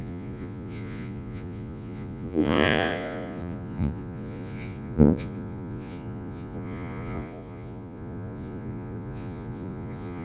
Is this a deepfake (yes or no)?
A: yes